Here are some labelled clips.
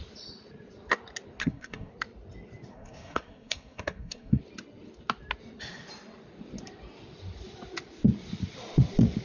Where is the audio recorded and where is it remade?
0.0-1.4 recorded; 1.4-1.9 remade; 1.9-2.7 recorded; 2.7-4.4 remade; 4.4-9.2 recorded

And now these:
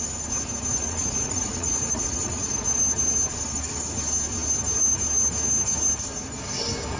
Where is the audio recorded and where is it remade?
0.0-0.7 recorded; 0.7-2.8 remade; 2.8-7.0 recorded

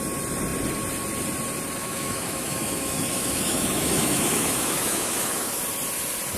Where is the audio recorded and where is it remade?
0.0-1.8 recorded; 1.8-5.6 remade; 5.6-6.4 recorded

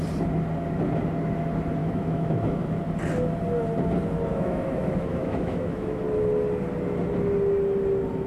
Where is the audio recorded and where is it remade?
0.0-1.8 recorded; 1.8-2.8 remade; 2.8-4.3 recorded; 4.3-6.0 remade; 6.0-8.3 recorded